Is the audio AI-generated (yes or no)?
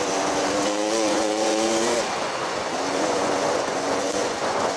yes